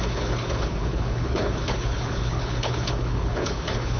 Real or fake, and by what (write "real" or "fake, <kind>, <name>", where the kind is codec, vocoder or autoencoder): fake, codec, HILCodec